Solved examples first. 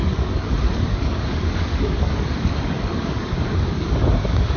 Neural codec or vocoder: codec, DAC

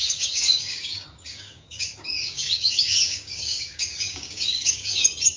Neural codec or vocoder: codec, DAC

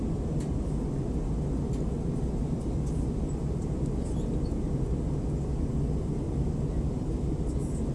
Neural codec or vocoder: none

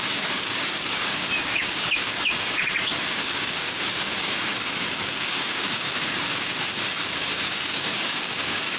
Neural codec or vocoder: codec, DAC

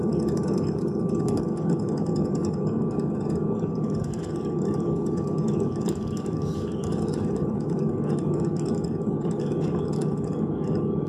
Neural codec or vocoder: codec, DAC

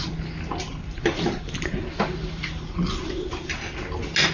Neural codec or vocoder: none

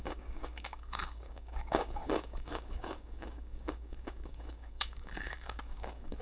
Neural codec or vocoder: codec, DAC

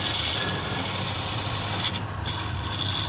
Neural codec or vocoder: none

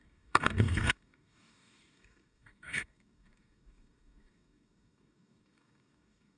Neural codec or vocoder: codec, DAC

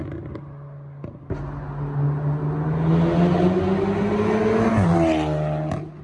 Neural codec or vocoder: none